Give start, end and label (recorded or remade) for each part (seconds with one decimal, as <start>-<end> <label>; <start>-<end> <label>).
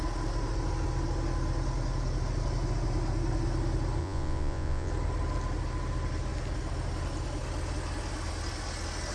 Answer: 0.0-4.0 recorded; 4.0-4.9 remade; 4.9-9.1 recorded